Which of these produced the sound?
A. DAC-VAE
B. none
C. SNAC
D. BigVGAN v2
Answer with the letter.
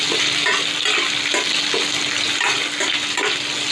B